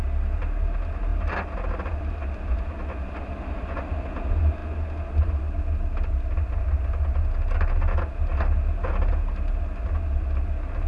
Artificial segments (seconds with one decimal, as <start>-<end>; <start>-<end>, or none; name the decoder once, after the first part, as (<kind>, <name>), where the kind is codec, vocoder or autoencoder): none